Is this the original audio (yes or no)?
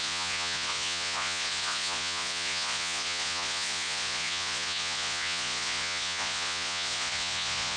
no